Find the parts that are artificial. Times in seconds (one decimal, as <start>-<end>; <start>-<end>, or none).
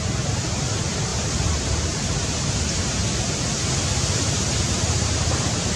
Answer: 0.0-1.1; 1.6-3.0; 4.7-5.8